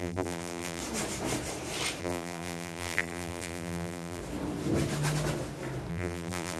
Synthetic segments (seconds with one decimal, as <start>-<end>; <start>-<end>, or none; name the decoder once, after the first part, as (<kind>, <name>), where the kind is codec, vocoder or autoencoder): 0.0-0.8 (vocoder, BigVGAN v2); 2.0-4.2; 5.9-6.6